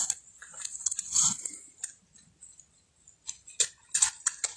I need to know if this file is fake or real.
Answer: real